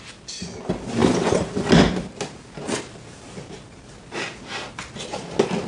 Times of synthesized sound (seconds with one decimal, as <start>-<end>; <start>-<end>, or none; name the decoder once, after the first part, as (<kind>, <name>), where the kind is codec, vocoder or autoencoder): none